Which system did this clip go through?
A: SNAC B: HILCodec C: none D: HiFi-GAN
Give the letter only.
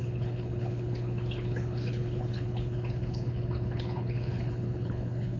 B